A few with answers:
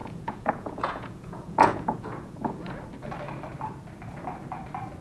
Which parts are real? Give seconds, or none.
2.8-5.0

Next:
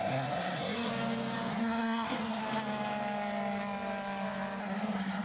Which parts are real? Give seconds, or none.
0.9-1.5; 2.4-4.6

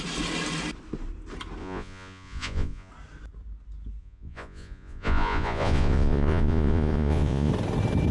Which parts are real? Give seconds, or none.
0.0-1.6; 2.9-4.0; 7.5-8.1